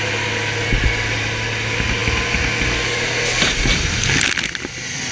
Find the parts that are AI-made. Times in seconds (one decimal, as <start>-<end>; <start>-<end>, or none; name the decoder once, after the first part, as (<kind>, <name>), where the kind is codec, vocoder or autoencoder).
none